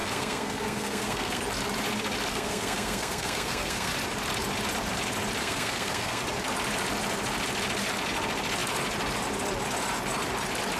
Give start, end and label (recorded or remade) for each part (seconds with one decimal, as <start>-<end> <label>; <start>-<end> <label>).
0.0-1.4 remade; 1.4-2.3 recorded; 2.3-3.9 remade; 3.9-5.4 recorded; 5.4-6.2 remade; 6.2-10.8 recorded